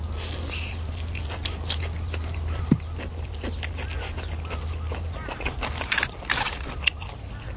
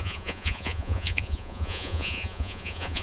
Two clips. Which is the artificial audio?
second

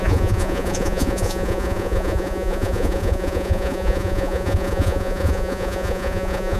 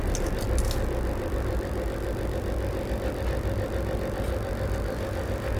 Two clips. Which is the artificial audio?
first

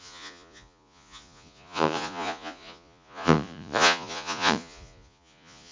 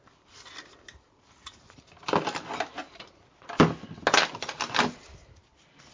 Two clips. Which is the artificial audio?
first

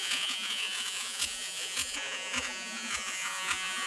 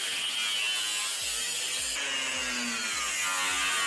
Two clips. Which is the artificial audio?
first